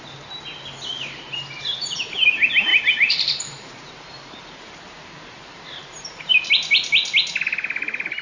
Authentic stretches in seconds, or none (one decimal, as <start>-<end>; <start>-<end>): 0.0-2.7; 6.5-8.2